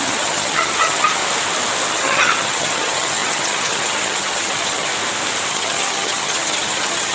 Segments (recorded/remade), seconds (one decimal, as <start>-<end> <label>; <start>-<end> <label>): 0.0-1.2 remade; 1.2-1.9 recorded; 1.9-4.9 remade; 4.9-5.5 recorded; 5.5-7.1 remade